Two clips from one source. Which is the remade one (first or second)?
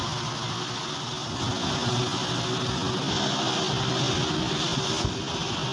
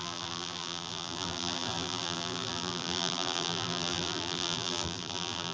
second